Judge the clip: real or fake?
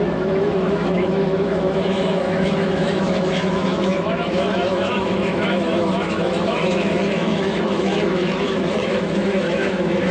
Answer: fake